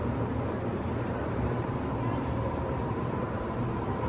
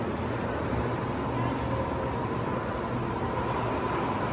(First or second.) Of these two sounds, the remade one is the first